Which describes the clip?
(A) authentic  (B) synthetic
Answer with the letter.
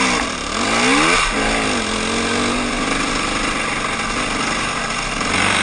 A